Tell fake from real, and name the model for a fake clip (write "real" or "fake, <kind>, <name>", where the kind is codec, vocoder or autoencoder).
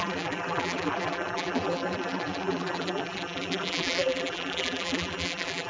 fake, vocoder, BigVGAN v2